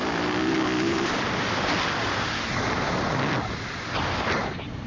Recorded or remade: recorded